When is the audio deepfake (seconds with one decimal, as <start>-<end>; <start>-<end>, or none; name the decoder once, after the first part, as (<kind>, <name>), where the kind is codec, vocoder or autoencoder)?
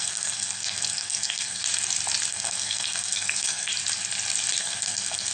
0.0-1.6 (codec, SNAC); 2.3-3.7; 4.6-5.3